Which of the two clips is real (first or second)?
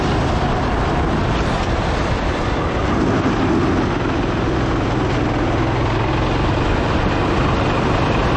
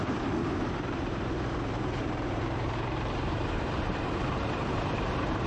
first